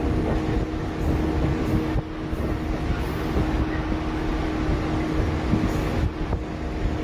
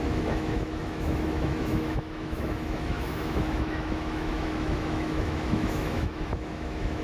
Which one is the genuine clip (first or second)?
first